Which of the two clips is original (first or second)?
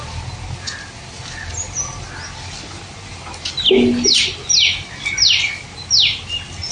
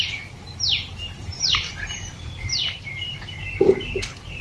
first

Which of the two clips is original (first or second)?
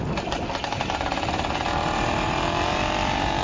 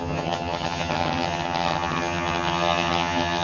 first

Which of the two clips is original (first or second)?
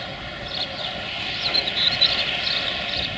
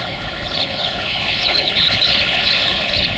first